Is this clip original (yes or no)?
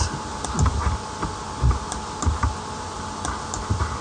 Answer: yes